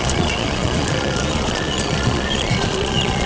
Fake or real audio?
fake